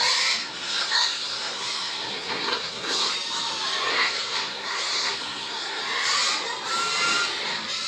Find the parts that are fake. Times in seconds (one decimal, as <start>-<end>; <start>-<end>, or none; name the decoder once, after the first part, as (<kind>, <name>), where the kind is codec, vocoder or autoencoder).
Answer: 0.4-3.1 (codec, SNAC); 3.9-5.8